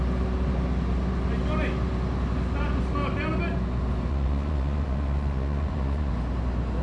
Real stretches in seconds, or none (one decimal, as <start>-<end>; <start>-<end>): 0.0-4.1; 6.1-6.8

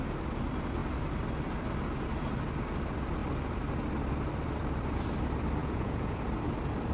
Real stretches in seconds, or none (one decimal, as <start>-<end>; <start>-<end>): 0.0-5.6; 6.2-6.9

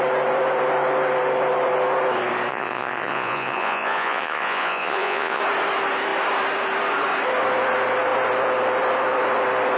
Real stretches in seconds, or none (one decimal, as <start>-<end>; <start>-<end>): 0.0-2.5; 5.4-9.8